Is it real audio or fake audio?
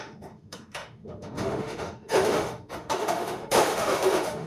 fake